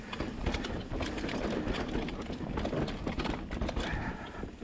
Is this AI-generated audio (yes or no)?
no